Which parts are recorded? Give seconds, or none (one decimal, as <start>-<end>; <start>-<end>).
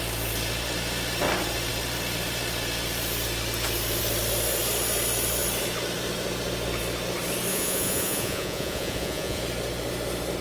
0.0-7.5; 9.4-10.4